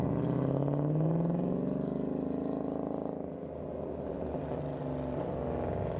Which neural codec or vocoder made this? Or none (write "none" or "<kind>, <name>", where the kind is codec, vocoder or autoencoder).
none